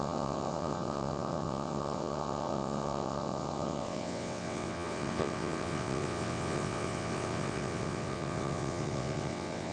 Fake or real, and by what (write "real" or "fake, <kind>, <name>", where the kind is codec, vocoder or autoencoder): fake, vocoder, WaveNeXt